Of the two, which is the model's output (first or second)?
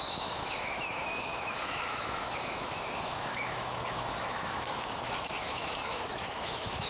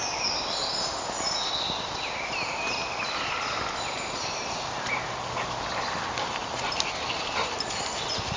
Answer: first